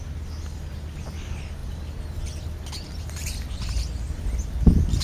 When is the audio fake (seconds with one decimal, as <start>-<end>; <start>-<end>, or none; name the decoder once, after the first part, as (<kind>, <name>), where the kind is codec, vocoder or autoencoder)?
none